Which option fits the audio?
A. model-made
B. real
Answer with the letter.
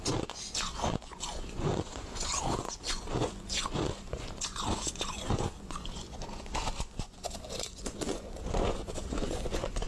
A